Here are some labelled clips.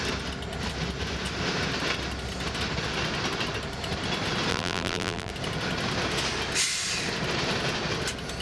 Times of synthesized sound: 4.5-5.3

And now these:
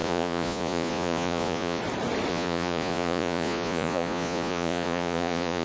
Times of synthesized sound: 0.0-1.8; 2.3-5.6

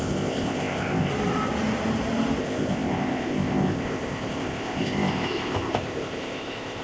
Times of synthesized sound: 0.0-1.1; 2.4-6.8

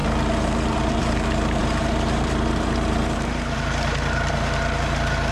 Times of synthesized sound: 0.0-5.3

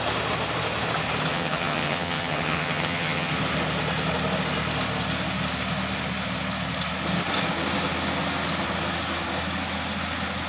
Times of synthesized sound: 1.3-3.3

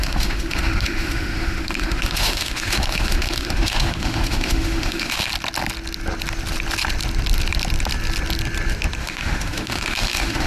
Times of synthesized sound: 0.0-5.3; 9.0-10.5

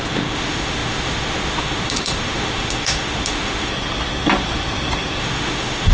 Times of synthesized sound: 0.0-3.7; 5.2-5.9

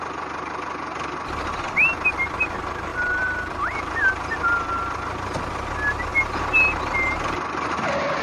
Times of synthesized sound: 2.9-4.0